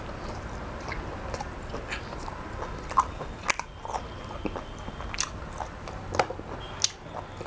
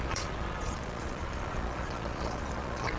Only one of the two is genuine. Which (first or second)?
first